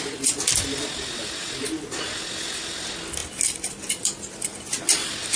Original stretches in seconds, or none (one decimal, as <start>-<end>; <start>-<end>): 0.0-5.4